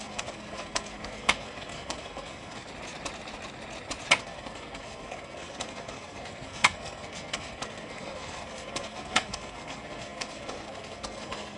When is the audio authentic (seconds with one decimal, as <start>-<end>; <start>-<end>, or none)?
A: 2.7-4.2